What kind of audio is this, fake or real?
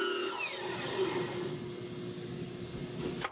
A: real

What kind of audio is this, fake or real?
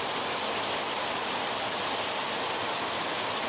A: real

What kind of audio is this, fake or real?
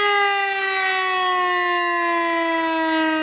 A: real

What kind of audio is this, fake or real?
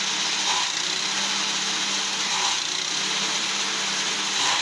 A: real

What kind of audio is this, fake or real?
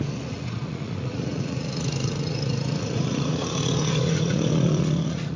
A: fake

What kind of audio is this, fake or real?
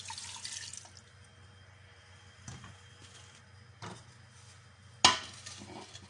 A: real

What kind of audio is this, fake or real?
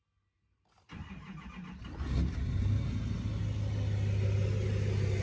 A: real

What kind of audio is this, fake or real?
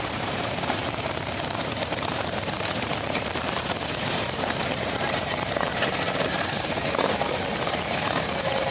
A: fake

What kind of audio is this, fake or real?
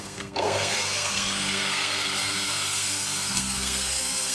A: fake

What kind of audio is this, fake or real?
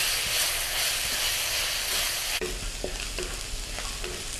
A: real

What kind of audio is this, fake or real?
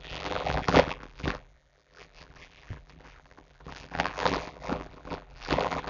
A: fake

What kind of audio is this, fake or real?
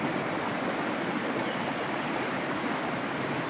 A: real